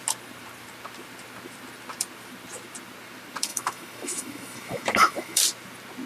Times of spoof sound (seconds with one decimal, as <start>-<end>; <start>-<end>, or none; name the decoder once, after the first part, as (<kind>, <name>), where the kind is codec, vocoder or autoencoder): 3.5-5.4 (autoencoder, DAC-VAE)